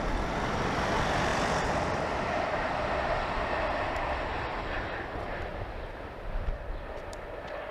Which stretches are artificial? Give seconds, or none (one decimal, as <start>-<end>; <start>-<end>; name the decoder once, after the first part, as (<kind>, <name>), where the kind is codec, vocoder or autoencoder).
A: 1.3-3.5 (vocoder, BigVGAN v2); 5.5-6.3